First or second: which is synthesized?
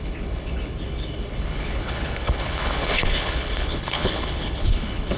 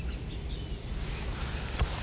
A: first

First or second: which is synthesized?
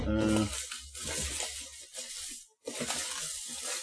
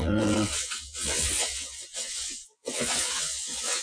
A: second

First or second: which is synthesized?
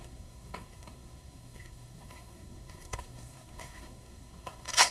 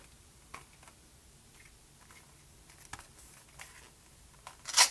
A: first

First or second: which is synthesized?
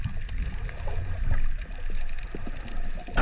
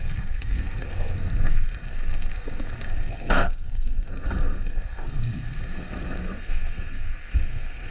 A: second